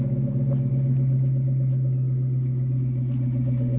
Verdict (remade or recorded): recorded